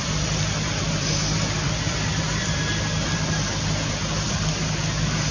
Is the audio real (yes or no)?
no